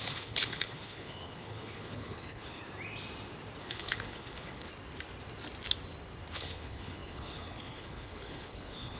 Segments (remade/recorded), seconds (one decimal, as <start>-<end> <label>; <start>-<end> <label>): 0.0-2.6 remade; 2.6-3.6 recorded; 3.6-4.7 remade; 4.7-6.3 recorded; 6.3-9.0 remade

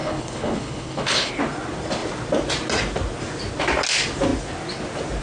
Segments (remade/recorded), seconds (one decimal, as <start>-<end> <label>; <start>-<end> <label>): 0.0-1.3 remade; 1.3-5.2 recorded

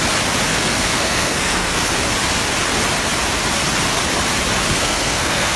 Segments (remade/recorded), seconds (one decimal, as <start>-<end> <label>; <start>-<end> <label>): 0.0-0.5 recorded; 0.5-1.9 remade; 1.9-4.7 recorded; 4.7-5.6 remade

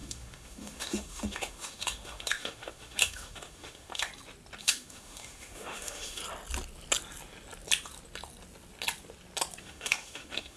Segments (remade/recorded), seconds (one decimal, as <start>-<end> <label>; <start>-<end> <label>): 0.0-4.1 remade; 4.1-4.6 recorded; 4.6-6.2 remade; 6.2-9.6 recorded; 9.6-10.6 remade

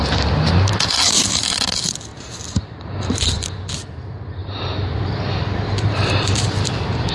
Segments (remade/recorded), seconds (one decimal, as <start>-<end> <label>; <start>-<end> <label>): 0.0-2.1 recorded; 2.1-3.7 remade; 3.7-4.4 recorded; 4.4-7.1 remade

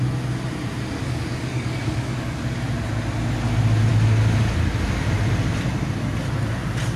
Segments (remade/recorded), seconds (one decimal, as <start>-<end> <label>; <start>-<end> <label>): 0.0-1.0 recorded; 1.0-2.4 remade; 2.4-7.0 recorded